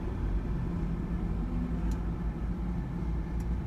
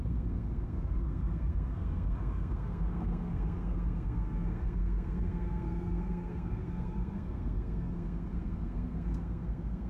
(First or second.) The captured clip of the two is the first